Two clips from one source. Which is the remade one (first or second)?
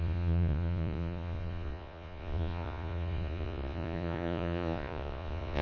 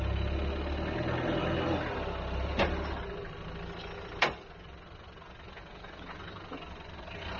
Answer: first